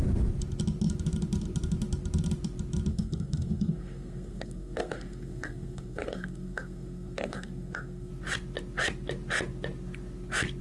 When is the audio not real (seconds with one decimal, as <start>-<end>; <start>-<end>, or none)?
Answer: 2.9-8.1